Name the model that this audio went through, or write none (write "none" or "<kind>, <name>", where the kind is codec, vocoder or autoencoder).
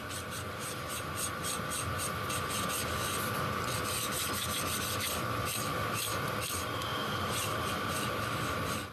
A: vocoder, BigVGAN v2